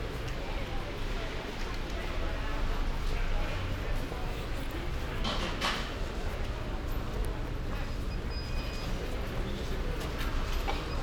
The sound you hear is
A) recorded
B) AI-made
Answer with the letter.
A